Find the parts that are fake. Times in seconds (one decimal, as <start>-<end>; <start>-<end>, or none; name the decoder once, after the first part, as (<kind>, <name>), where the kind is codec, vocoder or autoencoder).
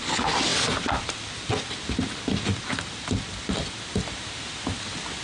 none